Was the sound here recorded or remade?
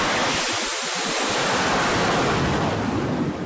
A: recorded